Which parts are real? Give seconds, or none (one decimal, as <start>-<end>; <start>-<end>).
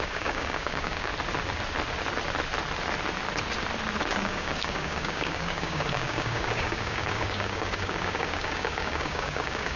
1.1-4.1